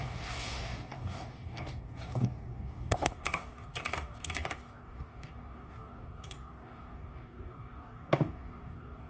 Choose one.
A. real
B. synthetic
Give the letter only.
B